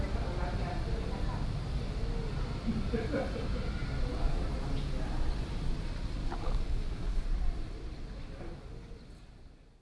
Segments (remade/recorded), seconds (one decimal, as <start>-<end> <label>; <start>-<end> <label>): 0.0-6.2 recorded; 6.2-7.2 remade; 7.2-9.8 recorded